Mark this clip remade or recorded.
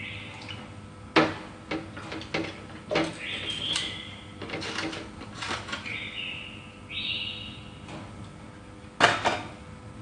recorded